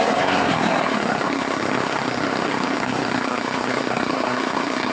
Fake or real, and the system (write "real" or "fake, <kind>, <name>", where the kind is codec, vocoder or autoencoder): fake, codec, SNAC